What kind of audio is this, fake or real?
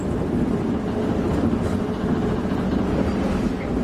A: real